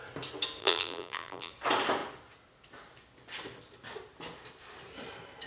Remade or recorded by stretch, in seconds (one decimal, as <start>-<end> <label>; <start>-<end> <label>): 0.0-0.6 recorded; 0.6-1.5 remade; 1.5-5.5 recorded